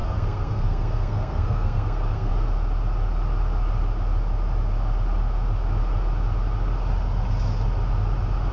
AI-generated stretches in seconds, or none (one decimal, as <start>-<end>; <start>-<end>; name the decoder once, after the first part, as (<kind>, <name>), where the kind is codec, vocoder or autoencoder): 0.0-2.3 (codec, SNAC)